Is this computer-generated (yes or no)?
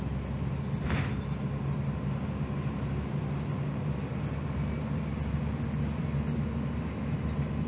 no